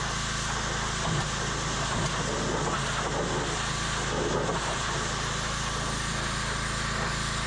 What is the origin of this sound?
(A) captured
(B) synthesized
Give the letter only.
A